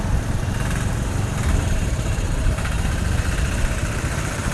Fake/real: fake